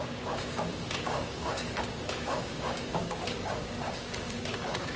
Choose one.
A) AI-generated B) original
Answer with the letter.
A